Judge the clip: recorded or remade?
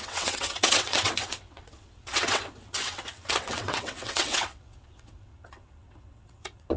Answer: remade